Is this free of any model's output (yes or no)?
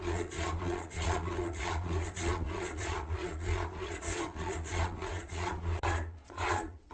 no